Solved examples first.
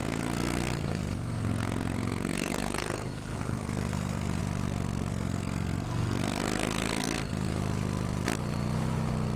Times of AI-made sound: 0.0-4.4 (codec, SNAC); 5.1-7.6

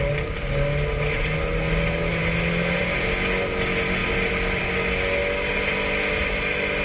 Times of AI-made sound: none

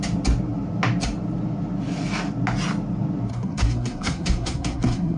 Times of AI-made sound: 3.3-5.2 (codec, SNAC)

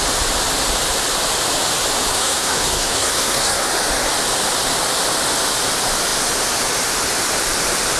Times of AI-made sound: 2.1-3.7 (codec, SNAC)